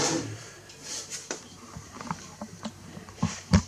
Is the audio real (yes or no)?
no